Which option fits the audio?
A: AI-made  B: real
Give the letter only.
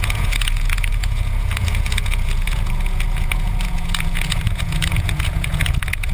A